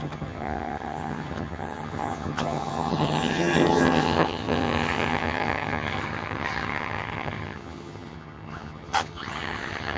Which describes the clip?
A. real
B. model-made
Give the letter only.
B